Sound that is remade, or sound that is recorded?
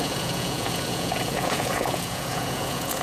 remade